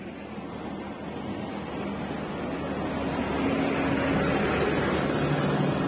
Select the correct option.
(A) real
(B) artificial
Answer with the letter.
A